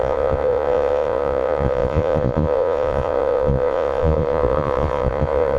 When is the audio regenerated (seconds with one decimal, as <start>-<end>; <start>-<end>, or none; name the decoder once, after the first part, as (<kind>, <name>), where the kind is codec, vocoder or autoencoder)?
0.0-5.6 (vocoder, Vocos)